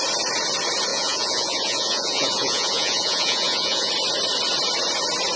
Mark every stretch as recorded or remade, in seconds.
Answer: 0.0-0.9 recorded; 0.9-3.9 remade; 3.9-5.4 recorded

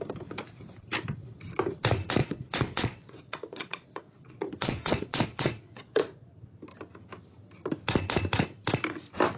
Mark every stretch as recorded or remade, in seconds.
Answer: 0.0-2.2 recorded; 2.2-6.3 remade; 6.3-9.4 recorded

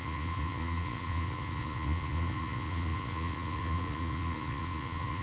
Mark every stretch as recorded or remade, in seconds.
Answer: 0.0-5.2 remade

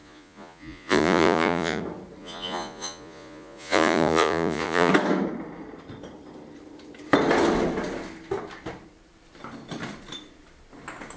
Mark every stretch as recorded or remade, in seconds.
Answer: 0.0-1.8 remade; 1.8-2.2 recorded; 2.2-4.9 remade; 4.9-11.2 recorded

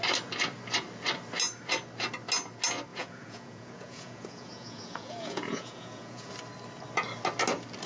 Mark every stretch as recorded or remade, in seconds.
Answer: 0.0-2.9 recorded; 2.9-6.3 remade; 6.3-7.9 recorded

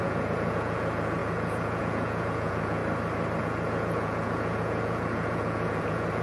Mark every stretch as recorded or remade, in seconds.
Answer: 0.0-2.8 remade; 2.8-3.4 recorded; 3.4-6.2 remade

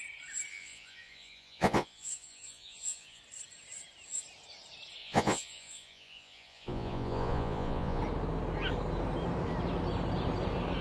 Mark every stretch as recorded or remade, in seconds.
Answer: 0.0-0.5 recorded; 0.5-3.2 remade; 3.2-5.0 recorded; 5.0-8.0 remade; 8.0-10.8 recorded

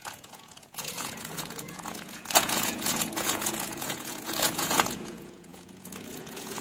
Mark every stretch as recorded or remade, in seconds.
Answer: 0.0-6.6 remade